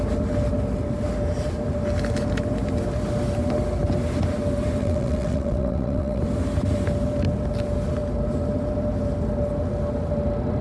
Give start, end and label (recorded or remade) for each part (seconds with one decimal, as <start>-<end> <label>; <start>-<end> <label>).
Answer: 0.0-4.8 recorded; 4.8-6.2 remade; 6.2-10.6 recorded